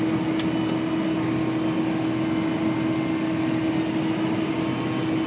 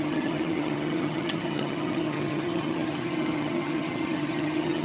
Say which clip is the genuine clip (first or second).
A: first